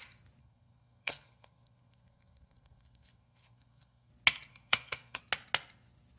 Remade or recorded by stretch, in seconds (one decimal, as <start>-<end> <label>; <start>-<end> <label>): 0.0-0.4 recorded; 0.4-4.1 remade; 4.1-4.5 recorded; 4.5-5.2 remade; 5.2-6.2 recorded